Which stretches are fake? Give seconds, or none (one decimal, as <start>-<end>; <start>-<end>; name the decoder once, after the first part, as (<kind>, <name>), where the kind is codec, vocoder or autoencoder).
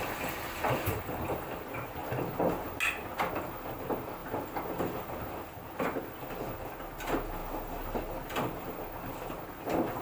none